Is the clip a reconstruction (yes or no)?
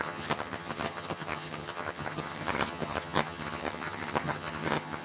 yes